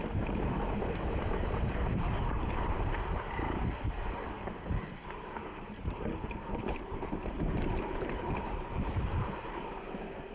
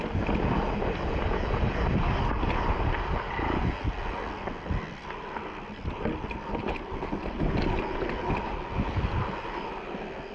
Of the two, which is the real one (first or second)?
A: second